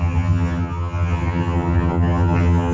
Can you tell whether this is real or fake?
fake